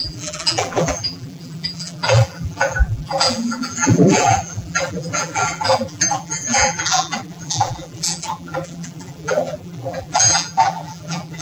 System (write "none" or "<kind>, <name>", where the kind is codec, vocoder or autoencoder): vocoder, BigVGAN v2